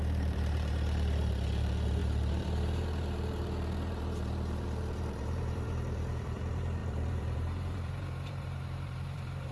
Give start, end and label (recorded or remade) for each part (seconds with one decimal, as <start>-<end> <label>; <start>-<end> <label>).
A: 0.0-9.5 remade